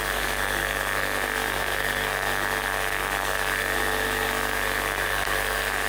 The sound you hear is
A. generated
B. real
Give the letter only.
A